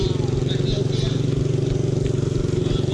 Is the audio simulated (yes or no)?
no